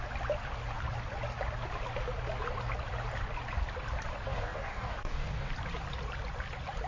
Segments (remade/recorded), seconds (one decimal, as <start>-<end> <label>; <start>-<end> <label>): 0.0-4.3 recorded; 4.3-5.5 remade; 5.5-6.9 recorded